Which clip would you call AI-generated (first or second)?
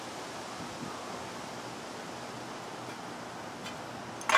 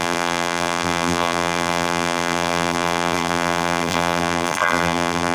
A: second